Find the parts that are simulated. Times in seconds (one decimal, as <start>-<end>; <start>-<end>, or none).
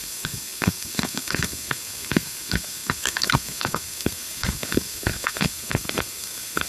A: 0.0-6.7